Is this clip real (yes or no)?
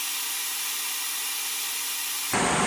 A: yes